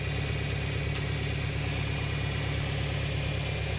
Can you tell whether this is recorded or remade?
recorded